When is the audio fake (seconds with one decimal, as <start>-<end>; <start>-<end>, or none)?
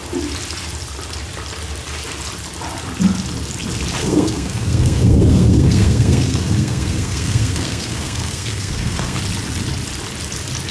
4.0-9.2